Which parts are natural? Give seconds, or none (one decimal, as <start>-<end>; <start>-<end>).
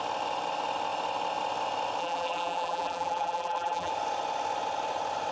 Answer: 0.0-2.0; 3.9-5.3